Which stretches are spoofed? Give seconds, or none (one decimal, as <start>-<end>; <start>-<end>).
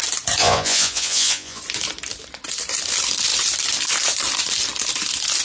0.4-1.6